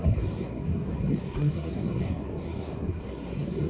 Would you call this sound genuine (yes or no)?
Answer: no